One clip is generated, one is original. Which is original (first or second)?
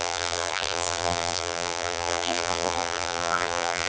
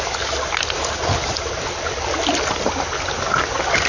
second